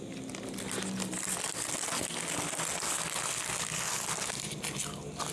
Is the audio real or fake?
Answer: real